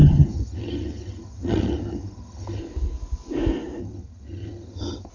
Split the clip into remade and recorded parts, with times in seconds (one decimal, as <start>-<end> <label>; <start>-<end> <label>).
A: 0.0-2.6 remade; 2.6-3.8 recorded; 3.8-5.1 remade